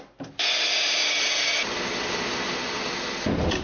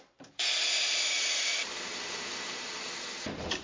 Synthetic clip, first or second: second